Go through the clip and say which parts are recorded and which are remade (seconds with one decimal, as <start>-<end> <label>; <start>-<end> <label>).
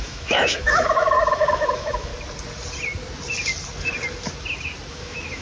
0.0-2.1 remade; 2.1-4.9 recorded; 4.9-5.4 remade